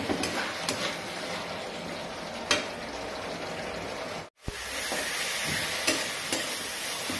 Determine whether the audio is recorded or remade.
recorded